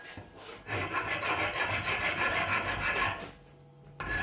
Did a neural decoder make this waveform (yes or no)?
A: no